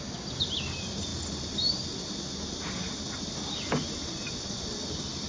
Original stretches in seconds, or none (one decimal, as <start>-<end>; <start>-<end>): 0.0-5.3